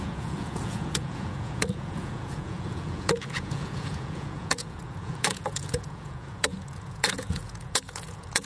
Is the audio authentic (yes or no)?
no